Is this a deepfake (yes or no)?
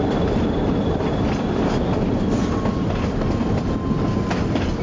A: no